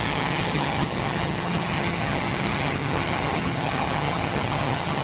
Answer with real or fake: fake